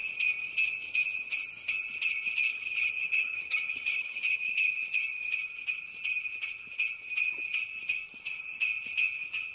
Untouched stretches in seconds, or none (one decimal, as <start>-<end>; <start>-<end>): 0.0-2.5; 4.5-9.5